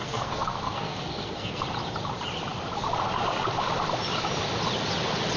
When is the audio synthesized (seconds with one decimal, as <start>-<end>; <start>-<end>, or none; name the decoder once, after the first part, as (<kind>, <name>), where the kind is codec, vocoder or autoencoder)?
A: 0.0-1.6 (codec, SNAC)